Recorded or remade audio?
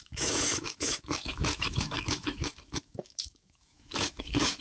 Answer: remade